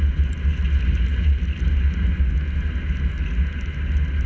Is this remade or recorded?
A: recorded